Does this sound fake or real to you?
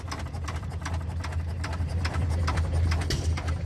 real